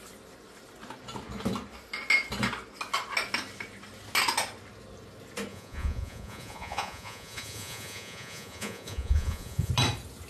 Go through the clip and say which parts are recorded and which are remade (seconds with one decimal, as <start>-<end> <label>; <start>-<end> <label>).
0.0-5.5 recorded; 5.5-9.7 remade; 9.7-10.3 recorded